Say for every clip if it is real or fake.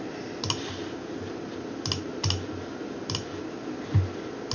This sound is real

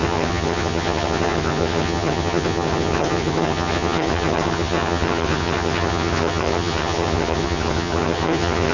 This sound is fake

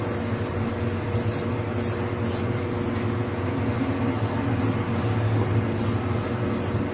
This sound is real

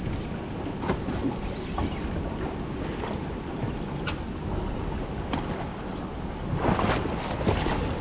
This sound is real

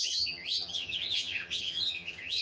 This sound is fake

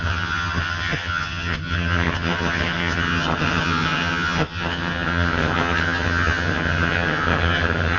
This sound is fake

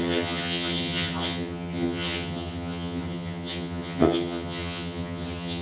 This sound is fake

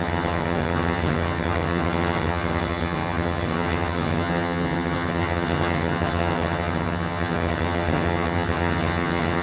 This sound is fake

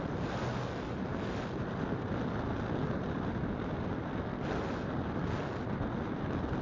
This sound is real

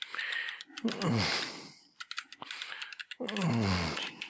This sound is real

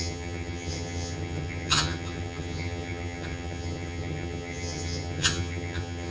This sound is fake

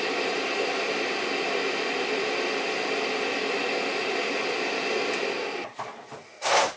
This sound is real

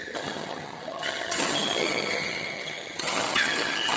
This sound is fake